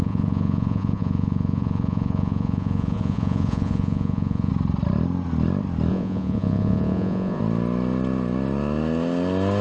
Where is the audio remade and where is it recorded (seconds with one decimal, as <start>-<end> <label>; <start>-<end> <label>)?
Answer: 0.0-4.5 remade; 4.5-5.9 recorded; 5.9-7.4 remade; 7.4-9.6 recorded